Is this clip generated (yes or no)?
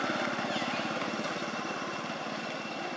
no